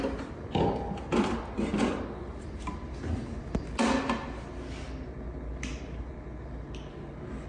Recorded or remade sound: recorded